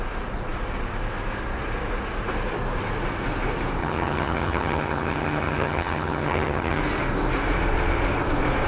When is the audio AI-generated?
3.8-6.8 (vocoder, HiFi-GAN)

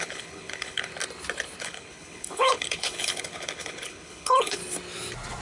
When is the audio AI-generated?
0.0-0.9 (codec, HILCodec); 1.6-4.6

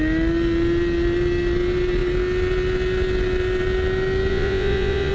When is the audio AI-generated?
4.3-5.1 (vocoder, Vocos)

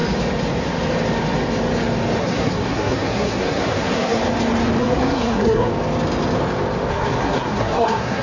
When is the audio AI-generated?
2.2-4.2 (codec, SNAC); 4.8-5.7; 6.9-8.2

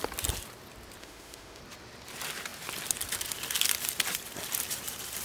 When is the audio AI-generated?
1.0-1.6 (autoencoder, DAC-VAE)